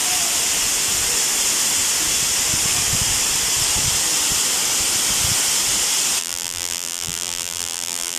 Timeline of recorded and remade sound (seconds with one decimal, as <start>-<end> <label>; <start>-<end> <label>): 0.0-6.2 recorded; 6.2-8.2 remade